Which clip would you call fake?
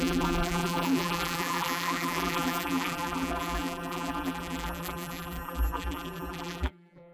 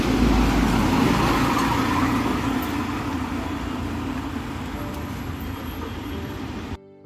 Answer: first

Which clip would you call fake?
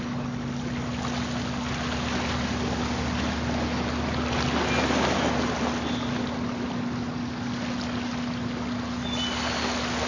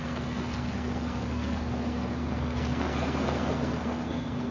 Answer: second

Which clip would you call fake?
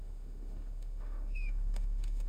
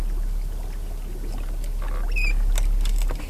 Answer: first